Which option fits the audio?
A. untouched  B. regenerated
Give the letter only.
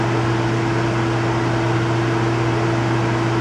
A